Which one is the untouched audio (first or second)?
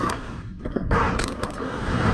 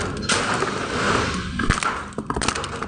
second